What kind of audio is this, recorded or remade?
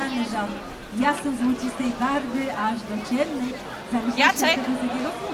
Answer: recorded